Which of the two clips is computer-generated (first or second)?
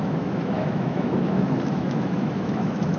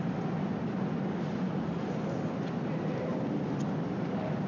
first